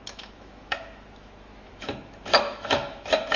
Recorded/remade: remade